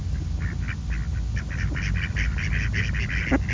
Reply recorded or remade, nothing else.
recorded